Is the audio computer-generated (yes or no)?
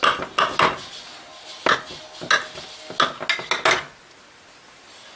no